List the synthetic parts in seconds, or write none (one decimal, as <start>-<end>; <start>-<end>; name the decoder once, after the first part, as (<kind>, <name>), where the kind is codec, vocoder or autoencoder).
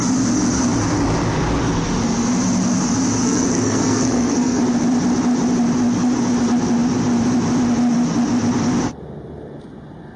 3.2-4.6 (codec, SNAC)